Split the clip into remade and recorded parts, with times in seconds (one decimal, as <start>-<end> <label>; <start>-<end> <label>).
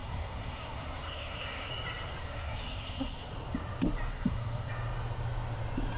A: 0.0-1.7 remade; 1.7-2.2 recorded; 2.2-3.3 remade; 3.3-4.1 recorded; 4.1-4.7 remade; 4.7-6.0 recorded